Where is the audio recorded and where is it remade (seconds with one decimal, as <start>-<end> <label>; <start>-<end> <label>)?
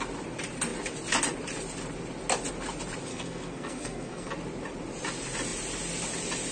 0.0-3.1 recorded; 3.1-4.3 remade; 4.3-6.5 recorded